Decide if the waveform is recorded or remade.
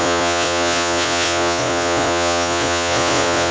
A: remade